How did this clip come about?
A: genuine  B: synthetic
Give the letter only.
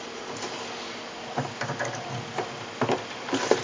A